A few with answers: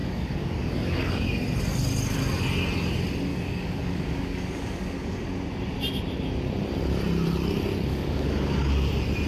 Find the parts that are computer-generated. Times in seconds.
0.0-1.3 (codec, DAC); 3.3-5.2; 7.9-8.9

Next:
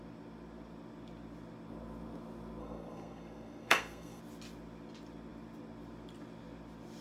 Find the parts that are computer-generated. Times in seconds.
2.6-4.2 (codec, SNAC)

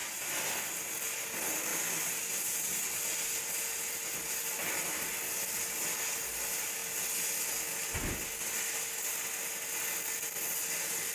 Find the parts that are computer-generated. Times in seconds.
none

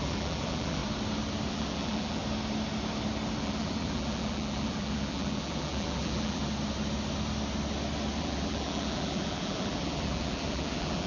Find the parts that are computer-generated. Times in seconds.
0.0-0.8 (vocoder, BigVGAN v2); 1.5-2.2; 3.4-6.4; 8.2-11.1

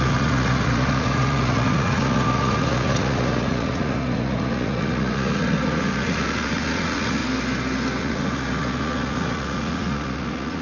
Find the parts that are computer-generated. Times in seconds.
0.0-7.2 (vocoder, Vocos); 8.0-10.6

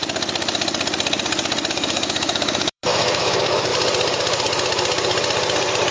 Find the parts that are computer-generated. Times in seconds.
1.7-3.7 (autoencoder, DAC-VAE)